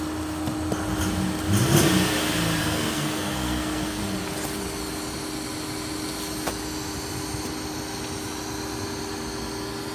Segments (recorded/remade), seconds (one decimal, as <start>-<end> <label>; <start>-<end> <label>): 0.0-2.6 recorded; 2.6-4.0 remade; 4.0-9.9 recorded